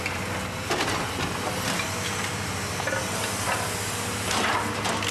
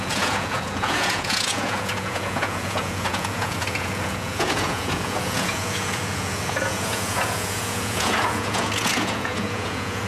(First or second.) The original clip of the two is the first